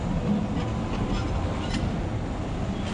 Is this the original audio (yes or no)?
yes